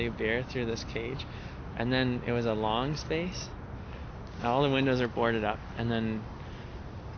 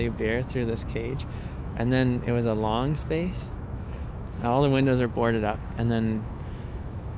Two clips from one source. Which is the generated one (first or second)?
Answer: second